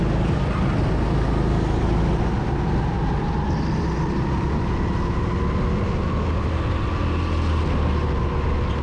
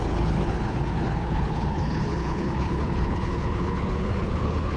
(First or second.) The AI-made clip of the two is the second